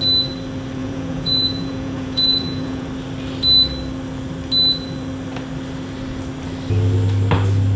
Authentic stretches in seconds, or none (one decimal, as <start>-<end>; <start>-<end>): 0.0-0.8; 2.9-7.8